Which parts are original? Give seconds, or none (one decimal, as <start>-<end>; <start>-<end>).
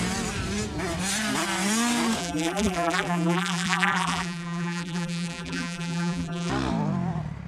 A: 0.0-2.2; 6.5-7.5